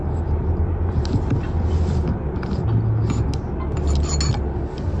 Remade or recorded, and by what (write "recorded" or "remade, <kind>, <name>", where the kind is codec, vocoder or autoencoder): recorded